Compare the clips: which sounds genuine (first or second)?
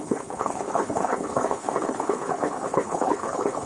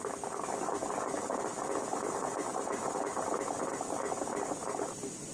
second